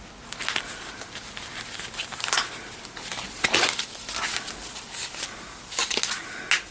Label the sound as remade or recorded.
recorded